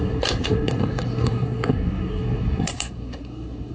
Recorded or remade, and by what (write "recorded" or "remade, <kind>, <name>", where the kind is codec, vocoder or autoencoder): remade, codec, SNAC